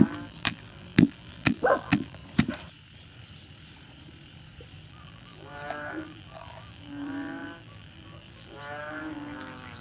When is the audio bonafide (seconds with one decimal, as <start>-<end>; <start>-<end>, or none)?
2.2-4.9